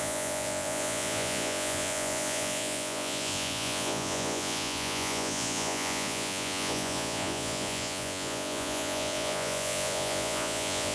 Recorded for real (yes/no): no